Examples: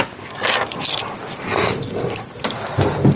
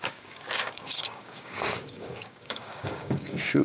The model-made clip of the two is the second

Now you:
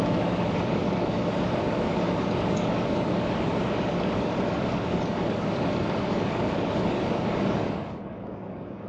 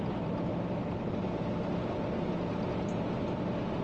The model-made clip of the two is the first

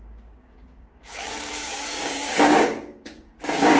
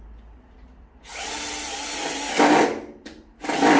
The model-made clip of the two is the first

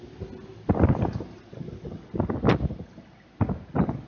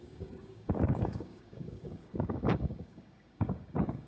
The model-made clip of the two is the second